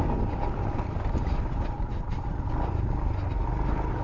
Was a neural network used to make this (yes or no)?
no